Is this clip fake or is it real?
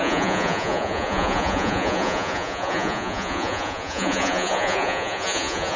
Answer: fake